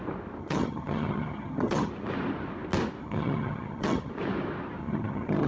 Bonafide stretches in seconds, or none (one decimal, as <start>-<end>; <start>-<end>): 0.0-0.4; 1.9-3.0; 4.1-4.8